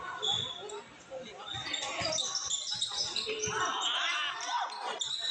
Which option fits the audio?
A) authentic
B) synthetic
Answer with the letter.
A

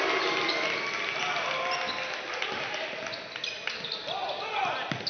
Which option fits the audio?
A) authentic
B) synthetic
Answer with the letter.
A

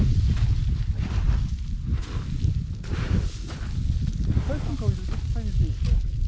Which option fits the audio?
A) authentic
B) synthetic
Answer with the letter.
A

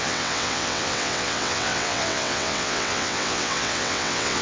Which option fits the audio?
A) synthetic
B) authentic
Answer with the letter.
A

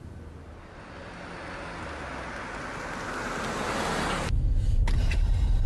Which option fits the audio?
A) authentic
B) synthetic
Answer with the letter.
A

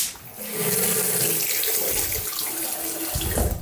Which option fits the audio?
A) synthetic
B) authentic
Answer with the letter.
B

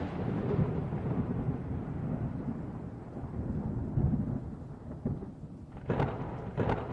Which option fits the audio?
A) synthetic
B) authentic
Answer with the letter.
B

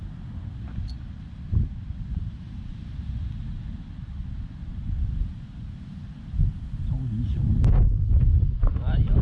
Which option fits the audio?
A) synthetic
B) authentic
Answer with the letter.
B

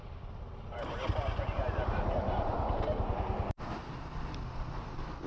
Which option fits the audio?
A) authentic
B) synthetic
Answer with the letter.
A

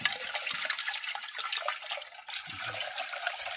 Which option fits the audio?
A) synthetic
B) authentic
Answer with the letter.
B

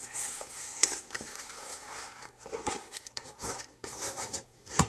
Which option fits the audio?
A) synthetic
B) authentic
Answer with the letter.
A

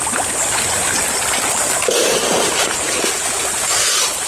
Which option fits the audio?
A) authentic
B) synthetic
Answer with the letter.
B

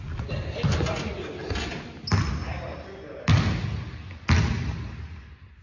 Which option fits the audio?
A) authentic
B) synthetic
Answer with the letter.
A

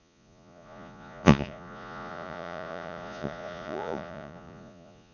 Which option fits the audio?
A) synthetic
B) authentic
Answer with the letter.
A